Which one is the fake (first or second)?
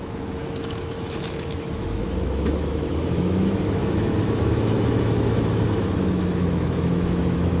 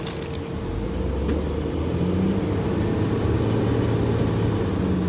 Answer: first